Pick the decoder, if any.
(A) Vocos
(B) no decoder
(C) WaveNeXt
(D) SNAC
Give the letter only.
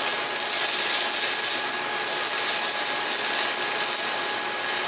B